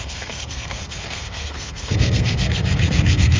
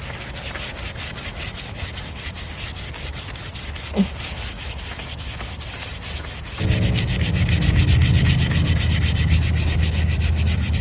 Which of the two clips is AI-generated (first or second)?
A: first